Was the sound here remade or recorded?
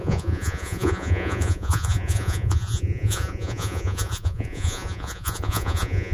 remade